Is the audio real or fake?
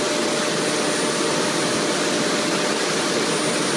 real